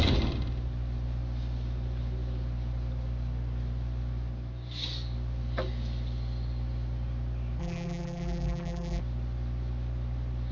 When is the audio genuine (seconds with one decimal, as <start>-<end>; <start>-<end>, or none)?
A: 0.0-7.6; 9.0-10.5